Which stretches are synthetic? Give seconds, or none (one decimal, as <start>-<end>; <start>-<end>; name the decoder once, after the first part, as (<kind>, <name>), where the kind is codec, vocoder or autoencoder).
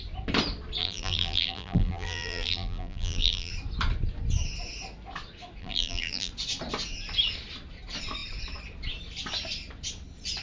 0.8-3.5 (vocoder, BigVGAN v2); 5.6-6.3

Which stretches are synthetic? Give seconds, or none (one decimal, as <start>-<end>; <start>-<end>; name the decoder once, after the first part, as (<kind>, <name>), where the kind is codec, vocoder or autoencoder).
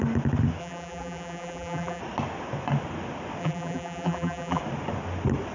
0.6-2.0 (vocoder, BigVGAN v2); 3.4-4.6